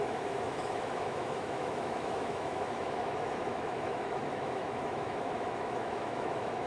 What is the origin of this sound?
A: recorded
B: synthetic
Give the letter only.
B